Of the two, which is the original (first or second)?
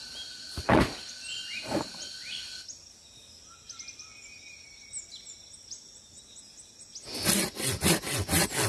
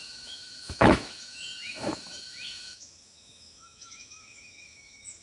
first